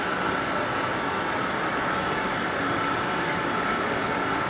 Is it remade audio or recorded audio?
recorded